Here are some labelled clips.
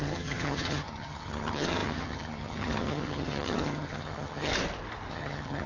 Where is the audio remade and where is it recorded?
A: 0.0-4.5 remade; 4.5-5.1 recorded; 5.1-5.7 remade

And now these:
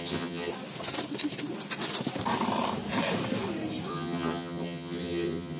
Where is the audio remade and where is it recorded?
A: 0.0-0.5 remade; 0.5-3.9 recorded; 3.9-5.6 remade

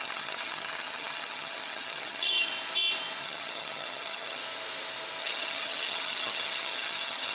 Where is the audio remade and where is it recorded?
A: 0.0-2.5 remade; 2.5-3.2 recorded; 3.2-4.4 remade; 4.4-5.2 recorded; 5.2-7.3 remade

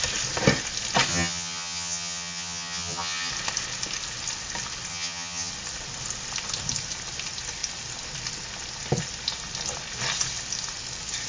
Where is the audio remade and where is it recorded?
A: 0.0-1.1 recorded; 1.1-3.3 remade; 3.3-4.9 recorded; 4.9-5.5 remade; 5.5-11.3 recorded

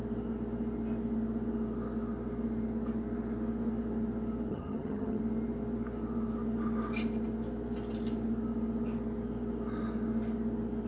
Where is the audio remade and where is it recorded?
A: 0.0-4.5 recorded; 4.5-5.2 remade; 5.2-10.9 recorded

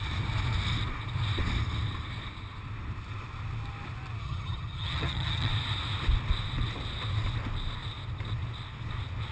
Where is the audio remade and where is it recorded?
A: 0.0-4.2 recorded; 4.2-5.5 remade; 5.5-9.3 recorded